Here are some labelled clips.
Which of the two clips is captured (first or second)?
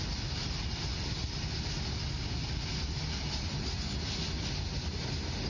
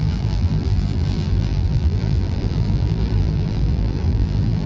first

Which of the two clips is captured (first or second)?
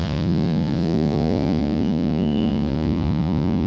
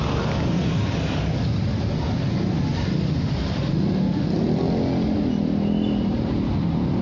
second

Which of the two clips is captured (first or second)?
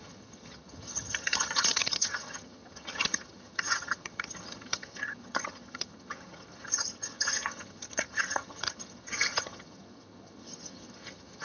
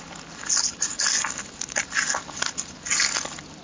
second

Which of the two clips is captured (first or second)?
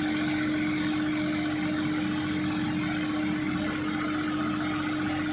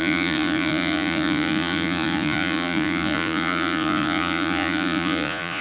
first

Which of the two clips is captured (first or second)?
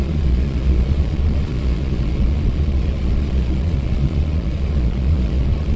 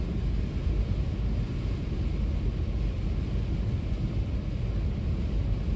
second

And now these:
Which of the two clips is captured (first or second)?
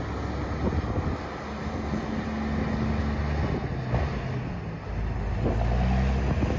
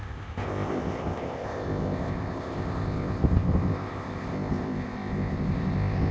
first